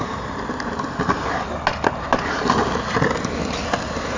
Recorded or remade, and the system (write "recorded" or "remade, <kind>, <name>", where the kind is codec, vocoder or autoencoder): recorded